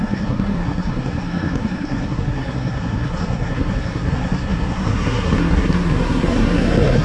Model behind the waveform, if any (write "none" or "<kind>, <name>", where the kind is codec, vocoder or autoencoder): codec, SNAC